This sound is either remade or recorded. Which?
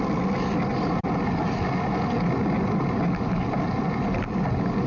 recorded